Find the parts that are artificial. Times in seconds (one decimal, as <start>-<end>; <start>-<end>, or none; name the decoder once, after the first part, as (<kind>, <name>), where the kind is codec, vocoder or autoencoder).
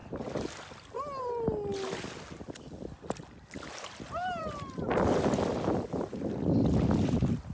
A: none